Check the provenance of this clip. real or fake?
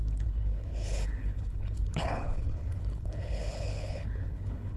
fake